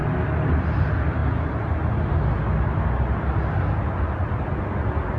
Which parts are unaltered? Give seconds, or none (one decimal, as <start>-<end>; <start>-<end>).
0.0-5.2